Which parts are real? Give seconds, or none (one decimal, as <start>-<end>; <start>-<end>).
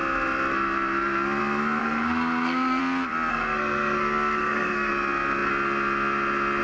0.0-1.8; 2.8-3.3; 4.9-6.6